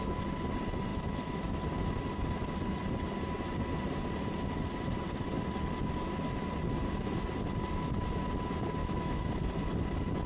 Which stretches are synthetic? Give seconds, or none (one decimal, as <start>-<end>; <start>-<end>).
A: 0.9-1.6; 8.8-9.3